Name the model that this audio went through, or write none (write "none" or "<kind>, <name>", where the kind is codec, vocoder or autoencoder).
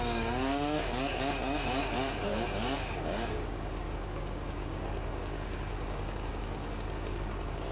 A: codec, DAC